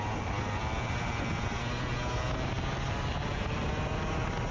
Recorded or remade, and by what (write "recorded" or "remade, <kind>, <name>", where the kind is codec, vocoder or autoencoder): recorded